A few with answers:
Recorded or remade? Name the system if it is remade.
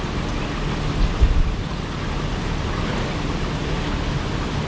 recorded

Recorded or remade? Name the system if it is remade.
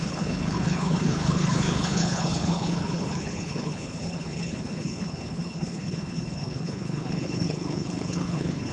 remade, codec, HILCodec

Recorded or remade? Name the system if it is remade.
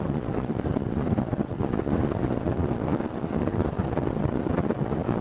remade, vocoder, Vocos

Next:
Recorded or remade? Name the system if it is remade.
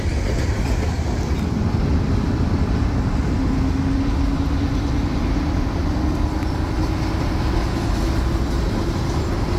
recorded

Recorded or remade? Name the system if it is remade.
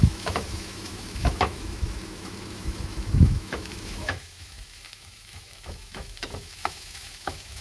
remade, autoencoder, DAC-VAE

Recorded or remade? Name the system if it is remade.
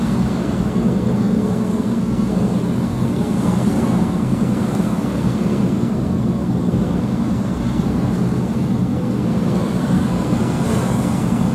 remade, codec, SNAC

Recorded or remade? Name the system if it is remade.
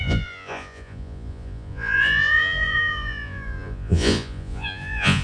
remade, vocoder, Vocos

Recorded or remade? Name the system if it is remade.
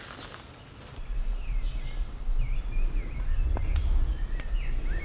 recorded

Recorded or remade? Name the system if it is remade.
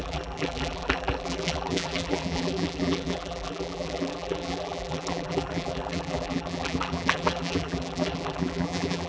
remade, vocoder, BigVGAN v2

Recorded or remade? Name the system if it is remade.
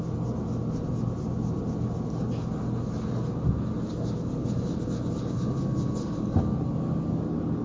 recorded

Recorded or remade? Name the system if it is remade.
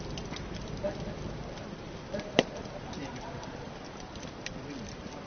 remade, vocoder, BigVGAN v2